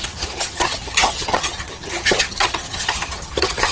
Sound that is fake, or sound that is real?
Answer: fake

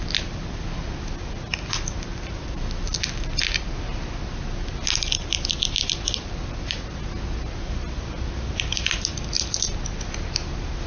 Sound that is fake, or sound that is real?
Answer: real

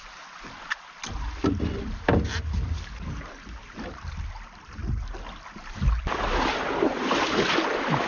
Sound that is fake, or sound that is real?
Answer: real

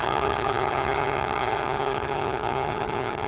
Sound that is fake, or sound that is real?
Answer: fake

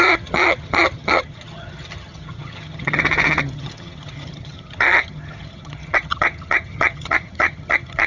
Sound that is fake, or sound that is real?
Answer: fake